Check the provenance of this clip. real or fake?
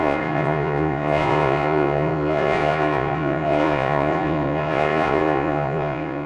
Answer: fake